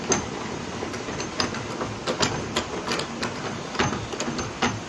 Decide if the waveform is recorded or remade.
recorded